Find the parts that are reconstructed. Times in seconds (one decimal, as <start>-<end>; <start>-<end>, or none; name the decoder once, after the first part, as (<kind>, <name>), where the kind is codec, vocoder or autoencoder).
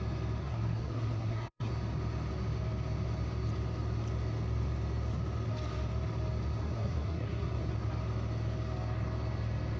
0.4-1.7 (codec, SNAC); 6.6-7.7